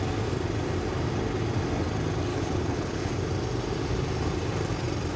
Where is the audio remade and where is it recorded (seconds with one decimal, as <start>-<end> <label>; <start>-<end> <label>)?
0.0-2.3 recorded; 2.3-3.1 remade; 3.1-5.2 recorded